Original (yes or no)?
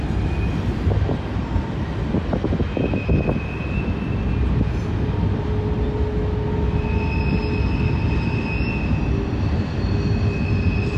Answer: yes